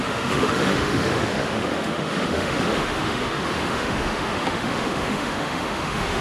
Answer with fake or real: fake